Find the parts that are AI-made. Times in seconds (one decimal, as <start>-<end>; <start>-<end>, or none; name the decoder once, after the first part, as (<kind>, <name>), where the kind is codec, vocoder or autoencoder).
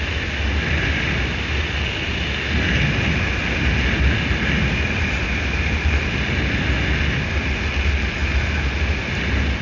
none